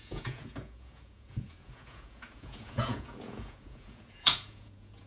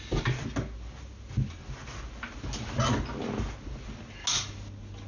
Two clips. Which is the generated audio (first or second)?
first